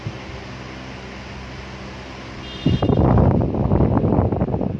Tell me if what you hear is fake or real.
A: real